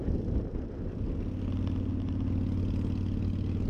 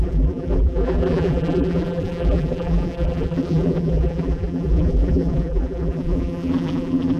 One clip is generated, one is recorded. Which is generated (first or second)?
second